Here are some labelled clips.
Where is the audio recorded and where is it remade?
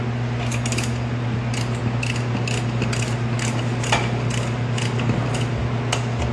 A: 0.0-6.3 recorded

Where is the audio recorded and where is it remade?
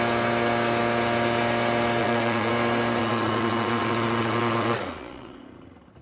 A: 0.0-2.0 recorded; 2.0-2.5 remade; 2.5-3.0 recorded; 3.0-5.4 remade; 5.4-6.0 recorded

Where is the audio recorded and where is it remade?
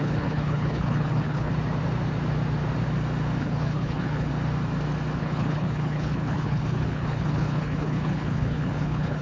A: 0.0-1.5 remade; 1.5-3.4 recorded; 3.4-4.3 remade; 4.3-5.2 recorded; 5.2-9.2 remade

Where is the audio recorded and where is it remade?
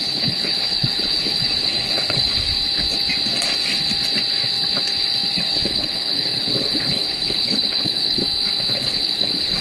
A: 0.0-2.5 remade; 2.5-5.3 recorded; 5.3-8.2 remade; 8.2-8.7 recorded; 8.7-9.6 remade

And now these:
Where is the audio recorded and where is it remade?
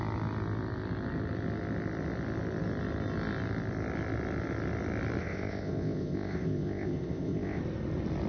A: 0.0-5.2 recorded; 5.2-7.6 remade; 7.6-8.3 recorded